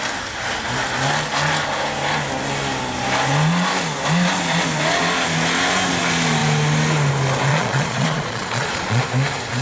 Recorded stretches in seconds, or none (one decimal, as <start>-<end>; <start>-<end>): 0.0-7.5; 9.0-9.6